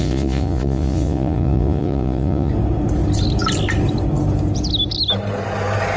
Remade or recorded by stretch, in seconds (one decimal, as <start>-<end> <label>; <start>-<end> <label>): 0.0-2.5 remade; 2.5-6.0 recorded